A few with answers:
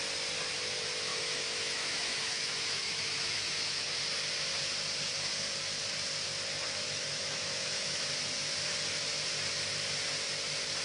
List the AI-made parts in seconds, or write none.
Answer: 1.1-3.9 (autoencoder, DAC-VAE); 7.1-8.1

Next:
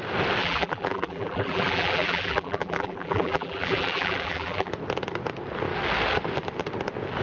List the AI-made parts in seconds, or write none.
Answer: 0.4-4.7 (vocoder, BigVGAN v2)

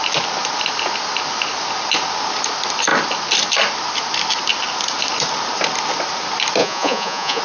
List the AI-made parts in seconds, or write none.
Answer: 6.6-7.4 (vocoder, Vocos)

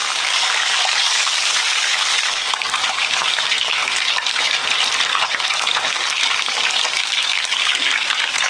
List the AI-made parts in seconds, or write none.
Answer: 0.0-4.6 (codec, DAC); 5.1-8.5

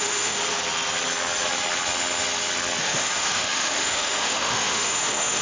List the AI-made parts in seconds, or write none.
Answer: 0.0-0.4 (autoencoder, DAC-VAE); 2.8-5.4

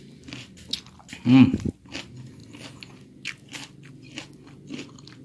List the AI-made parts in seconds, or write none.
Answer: none

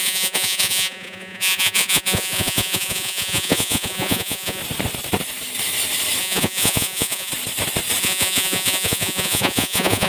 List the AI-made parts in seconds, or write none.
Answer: 0.0-4.6 (vocoder, Vocos); 6.2-7.3; 8.0-10.1